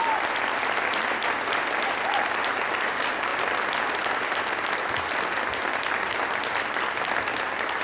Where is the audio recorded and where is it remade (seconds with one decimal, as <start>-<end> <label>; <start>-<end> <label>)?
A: 0.0-7.8 recorded